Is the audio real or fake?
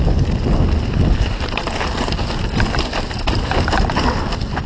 real